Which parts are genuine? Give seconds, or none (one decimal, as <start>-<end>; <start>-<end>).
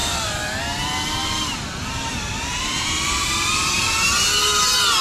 0.0-1.2; 3.9-5.0